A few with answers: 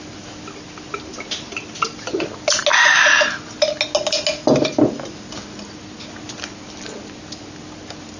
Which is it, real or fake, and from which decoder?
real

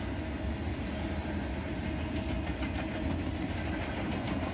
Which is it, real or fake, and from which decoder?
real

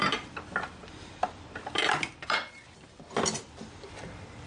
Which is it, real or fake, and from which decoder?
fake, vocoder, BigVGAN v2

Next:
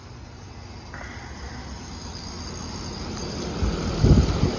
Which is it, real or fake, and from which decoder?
real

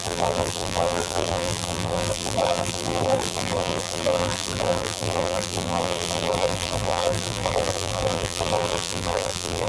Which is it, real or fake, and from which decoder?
fake, vocoder, BigVGAN v2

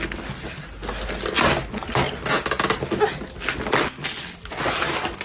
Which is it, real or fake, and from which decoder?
real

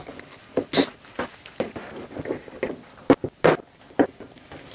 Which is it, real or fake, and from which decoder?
real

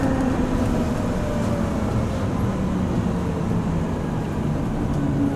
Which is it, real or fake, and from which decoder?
real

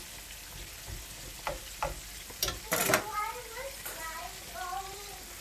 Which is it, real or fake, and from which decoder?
real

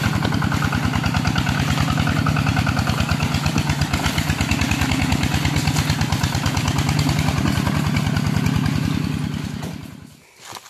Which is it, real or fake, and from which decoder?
real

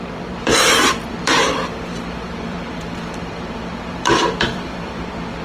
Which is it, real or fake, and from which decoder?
fake, vocoder, BigVGAN v2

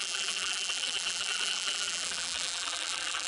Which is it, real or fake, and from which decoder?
fake, vocoder, BigVGAN v2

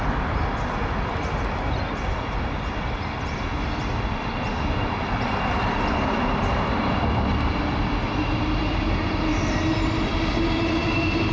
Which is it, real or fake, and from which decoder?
real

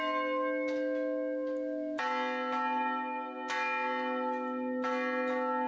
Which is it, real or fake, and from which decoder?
real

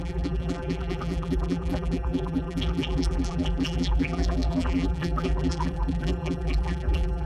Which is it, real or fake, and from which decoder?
fake, vocoder, BigVGAN v2